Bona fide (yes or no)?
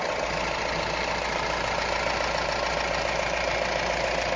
yes